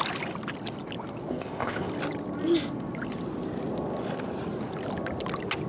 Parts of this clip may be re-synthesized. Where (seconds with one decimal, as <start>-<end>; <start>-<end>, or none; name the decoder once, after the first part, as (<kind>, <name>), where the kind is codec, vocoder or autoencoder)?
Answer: 1.3-1.9 (codec, ZipCodec)